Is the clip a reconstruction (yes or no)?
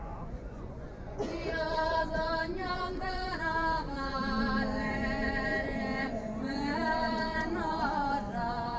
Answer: yes